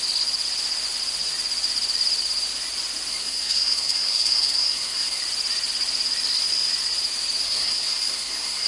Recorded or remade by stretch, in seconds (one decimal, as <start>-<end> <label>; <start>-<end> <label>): 0.0-3.1 recorded; 3.1-5.2 remade; 5.2-7.4 recorded; 7.4-8.7 remade